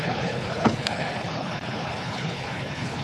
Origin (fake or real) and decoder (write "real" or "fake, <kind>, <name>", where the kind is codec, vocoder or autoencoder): fake, codec, HILCodec